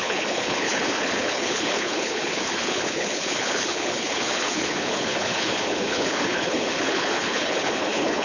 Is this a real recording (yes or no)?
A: no